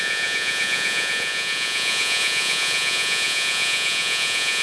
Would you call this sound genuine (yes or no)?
no